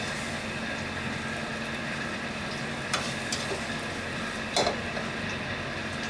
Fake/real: real